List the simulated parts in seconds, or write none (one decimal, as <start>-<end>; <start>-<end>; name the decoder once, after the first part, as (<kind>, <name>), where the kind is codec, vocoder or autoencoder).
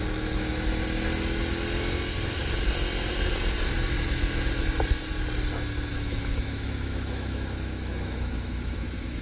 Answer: 0.0-0.7 (autoencoder, DAC-VAE); 5.9-9.2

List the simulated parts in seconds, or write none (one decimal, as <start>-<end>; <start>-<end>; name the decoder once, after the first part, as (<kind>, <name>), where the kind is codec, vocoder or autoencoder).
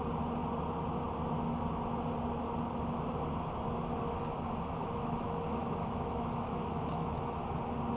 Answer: 4.8-7.2 (autoencoder, DAC-VAE)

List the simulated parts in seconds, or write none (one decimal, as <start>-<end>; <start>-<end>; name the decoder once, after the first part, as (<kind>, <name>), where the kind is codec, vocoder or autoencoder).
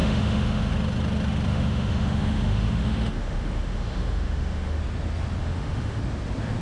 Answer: 0.0-0.7 (autoencoder, DAC-VAE); 1.5-4.8; 5.4-6.0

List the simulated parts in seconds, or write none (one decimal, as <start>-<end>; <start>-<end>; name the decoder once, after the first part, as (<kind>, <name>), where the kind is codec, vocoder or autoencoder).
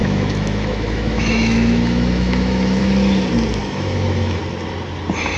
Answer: 0.0-2.8 (autoencoder, DAC-VAE); 3.6-4.4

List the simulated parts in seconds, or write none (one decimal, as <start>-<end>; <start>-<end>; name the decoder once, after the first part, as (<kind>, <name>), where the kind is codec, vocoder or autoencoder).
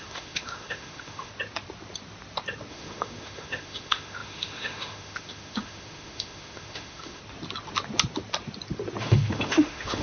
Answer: 0.0-1.3 (autoencoder, DAC-VAE); 2.7-7.2; 9.0-10.0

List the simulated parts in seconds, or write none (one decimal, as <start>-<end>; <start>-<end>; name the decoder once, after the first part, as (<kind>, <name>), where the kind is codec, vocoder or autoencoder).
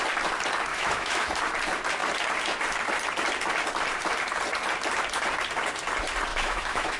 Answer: 0.7-1.4 (autoencoder, DAC-VAE); 6.3-7.0